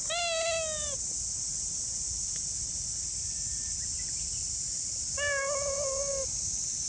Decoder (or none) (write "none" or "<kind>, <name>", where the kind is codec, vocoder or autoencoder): none